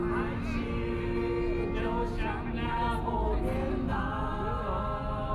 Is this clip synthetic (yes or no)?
no